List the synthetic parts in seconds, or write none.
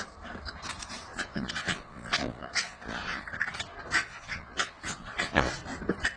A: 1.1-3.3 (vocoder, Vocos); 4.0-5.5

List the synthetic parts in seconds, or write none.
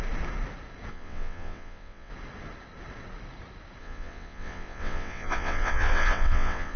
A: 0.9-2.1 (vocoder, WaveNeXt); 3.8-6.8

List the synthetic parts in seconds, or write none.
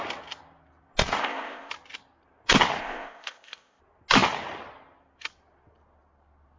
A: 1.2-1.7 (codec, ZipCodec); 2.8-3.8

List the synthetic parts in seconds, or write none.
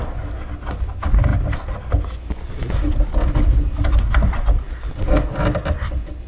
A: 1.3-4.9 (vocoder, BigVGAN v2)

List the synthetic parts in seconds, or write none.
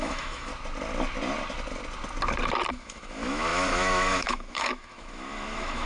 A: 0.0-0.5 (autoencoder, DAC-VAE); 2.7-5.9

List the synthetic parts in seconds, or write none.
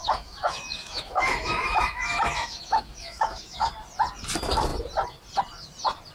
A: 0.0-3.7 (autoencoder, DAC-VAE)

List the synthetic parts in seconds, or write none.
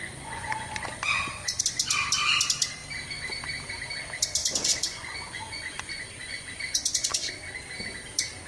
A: 0.0-1.6 (vocoder, Vocos); 4.4-7.3